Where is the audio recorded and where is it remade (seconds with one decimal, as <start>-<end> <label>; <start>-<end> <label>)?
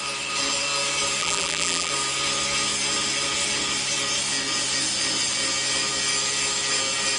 0.0-1.2 recorded; 1.2-1.9 remade; 1.9-7.2 recorded